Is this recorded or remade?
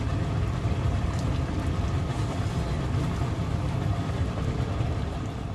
remade